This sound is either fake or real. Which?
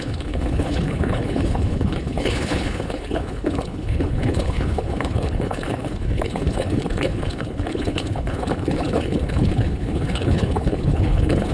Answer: fake